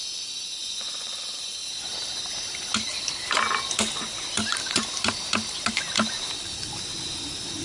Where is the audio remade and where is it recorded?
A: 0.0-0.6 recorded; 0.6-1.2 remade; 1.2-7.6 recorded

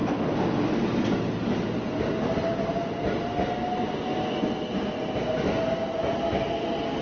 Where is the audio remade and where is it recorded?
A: 0.0-7.0 recorded

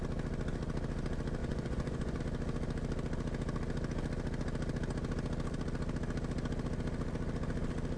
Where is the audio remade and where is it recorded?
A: 0.0-1.4 recorded; 1.4-2.2 remade; 2.2-8.0 recorded

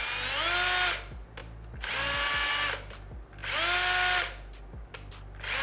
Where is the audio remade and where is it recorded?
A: 0.0-5.6 recorded

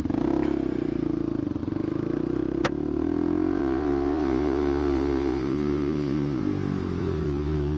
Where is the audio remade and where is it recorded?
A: 0.0-3.6 recorded; 3.6-6.4 remade; 6.4-7.0 recorded; 7.0-7.8 remade